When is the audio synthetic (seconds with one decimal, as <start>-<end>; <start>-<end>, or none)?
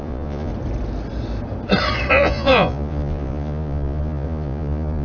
0.0-0.5; 2.1-5.0